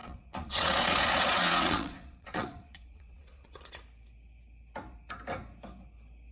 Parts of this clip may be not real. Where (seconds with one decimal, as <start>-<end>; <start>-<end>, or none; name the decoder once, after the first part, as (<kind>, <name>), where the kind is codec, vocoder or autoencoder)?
0.0-3.8 (vocoder, Vocos)